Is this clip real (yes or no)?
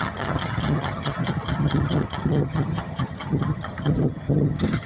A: no